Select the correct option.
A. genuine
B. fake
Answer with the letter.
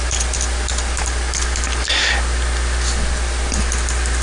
A